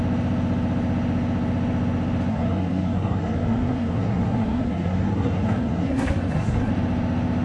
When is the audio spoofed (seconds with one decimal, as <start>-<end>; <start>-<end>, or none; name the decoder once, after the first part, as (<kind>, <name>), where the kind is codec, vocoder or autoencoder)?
2.3-6.7 (codec, SNAC)